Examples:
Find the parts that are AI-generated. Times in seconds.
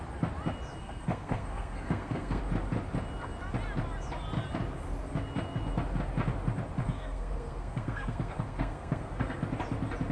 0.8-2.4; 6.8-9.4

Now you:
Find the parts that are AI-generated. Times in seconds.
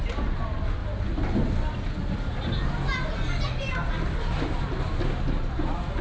none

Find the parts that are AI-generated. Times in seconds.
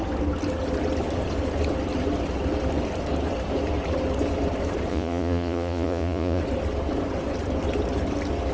4.9-6.4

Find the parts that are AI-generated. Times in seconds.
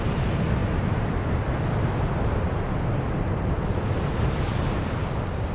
none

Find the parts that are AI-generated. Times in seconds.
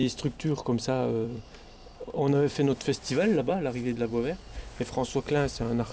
0.0-4.1